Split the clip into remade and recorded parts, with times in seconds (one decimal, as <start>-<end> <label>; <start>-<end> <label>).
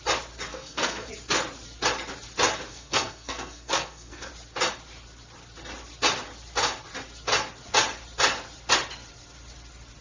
0.0-0.5 recorded; 0.5-1.1 remade; 1.1-2.7 recorded; 2.7-4.3 remade; 4.3-10.0 recorded